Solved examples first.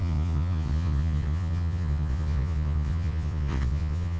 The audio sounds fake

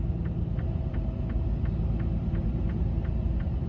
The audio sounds real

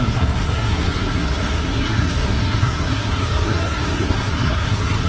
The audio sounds fake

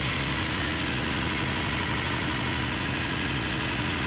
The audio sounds fake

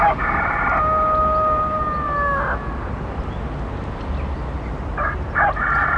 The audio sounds real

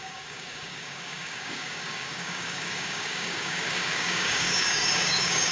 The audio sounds fake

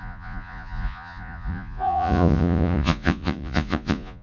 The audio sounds fake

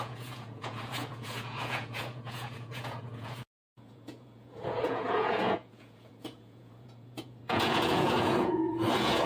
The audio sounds fake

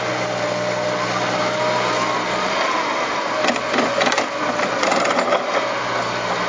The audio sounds real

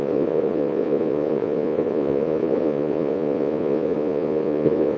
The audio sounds fake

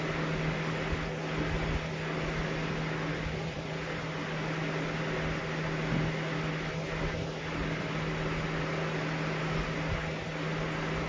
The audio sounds real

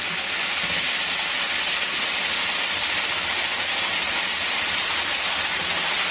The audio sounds real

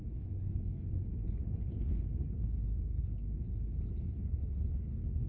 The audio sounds fake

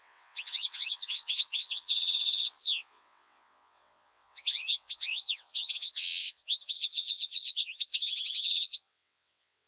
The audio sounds fake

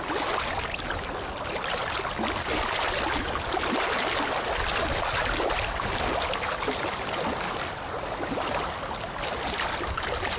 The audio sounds real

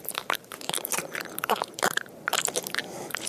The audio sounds fake